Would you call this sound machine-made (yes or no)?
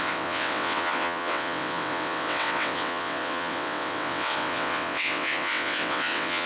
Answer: yes